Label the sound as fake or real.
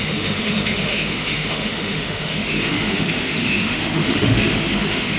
fake